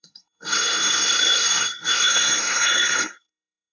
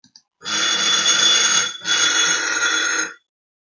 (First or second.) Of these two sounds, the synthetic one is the first